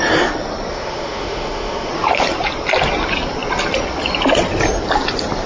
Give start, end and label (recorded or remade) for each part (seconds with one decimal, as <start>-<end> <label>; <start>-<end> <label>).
0.0-0.7 recorded; 0.7-1.9 remade; 1.9-5.5 recorded